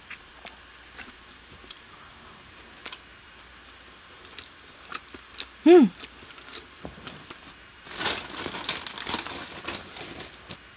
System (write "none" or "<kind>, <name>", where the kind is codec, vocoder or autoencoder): none